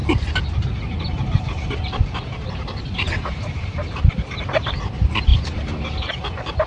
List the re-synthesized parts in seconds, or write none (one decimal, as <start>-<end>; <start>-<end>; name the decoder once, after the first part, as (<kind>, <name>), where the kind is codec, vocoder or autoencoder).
0.8-6.7 (vocoder, BigVGAN v2)